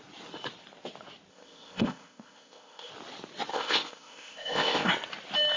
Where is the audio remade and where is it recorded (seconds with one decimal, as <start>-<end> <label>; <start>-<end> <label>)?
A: 0.0-1.3 recorded; 1.3-2.9 remade; 2.9-3.5 recorded; 3.5-4.9 remade; 4.9-5.6 recorded